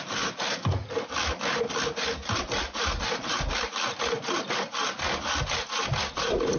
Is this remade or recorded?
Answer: recorded